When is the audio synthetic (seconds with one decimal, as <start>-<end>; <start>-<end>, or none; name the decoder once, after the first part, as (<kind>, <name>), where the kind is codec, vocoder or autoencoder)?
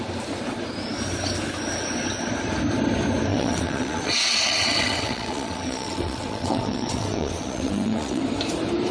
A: 3.3-8.2 (vocoder, WaveNeXt)